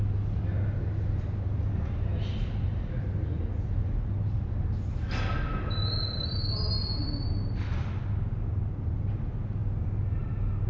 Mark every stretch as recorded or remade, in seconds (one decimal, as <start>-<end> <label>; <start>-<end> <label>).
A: 0.0-10.7 recorded